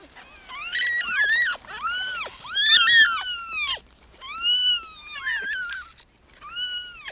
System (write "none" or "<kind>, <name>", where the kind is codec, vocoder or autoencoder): none